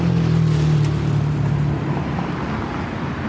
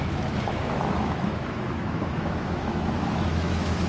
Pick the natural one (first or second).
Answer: first